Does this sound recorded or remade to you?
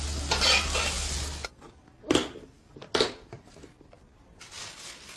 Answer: recorded